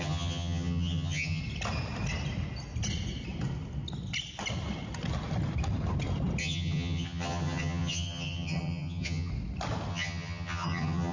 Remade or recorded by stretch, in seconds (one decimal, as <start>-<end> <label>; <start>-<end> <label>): 0.0-1.4 remade; 1.4-6.4 recorded; 6.4-9.3 remade; 9.3-9.9 recorded; 9.9-11.1 remade